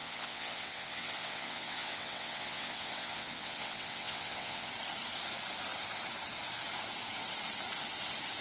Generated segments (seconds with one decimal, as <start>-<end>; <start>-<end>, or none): 0.0-4.7